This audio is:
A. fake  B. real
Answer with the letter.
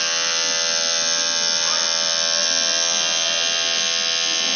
B